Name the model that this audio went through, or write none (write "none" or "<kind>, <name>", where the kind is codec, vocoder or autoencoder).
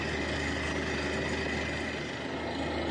none